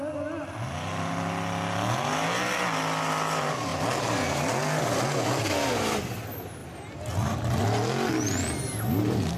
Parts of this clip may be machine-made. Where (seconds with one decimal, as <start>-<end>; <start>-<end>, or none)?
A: none

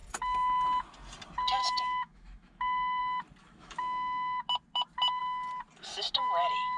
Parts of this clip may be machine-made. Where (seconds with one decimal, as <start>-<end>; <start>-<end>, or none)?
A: 1.6-3.0; 3.4-4.4

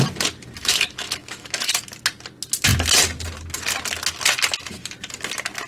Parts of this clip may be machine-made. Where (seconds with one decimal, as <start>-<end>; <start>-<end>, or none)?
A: 0.6-1.8